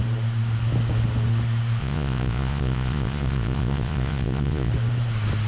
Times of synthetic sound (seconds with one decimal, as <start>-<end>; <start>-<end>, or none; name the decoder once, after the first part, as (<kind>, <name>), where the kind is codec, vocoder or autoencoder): 1.8-4.7 (vocoder, Vocos)